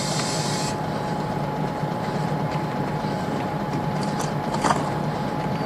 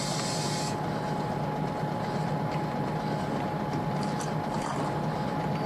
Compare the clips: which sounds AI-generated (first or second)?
first